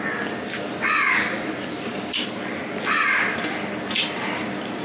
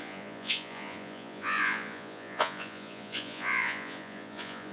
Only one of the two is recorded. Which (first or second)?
first